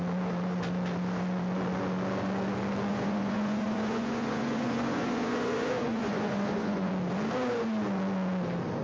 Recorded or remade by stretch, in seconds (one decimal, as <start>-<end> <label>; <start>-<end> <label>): 0.0-2.9 recorded; 2.9-6.9 remade; 6.9-8.8 recorded